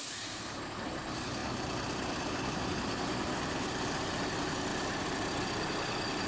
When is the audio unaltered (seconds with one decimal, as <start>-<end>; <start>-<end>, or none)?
0.0-6.3